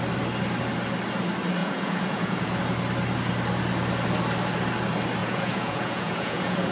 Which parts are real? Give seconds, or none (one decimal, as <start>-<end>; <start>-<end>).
0.0-1.6; 2.6-5.2